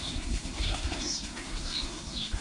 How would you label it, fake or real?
fake